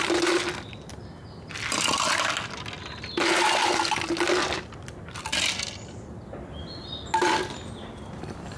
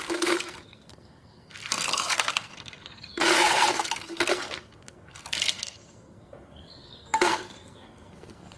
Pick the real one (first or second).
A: first